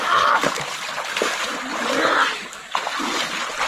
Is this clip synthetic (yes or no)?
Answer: no